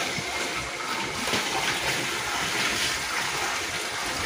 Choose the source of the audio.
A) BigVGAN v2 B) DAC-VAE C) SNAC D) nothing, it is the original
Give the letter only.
D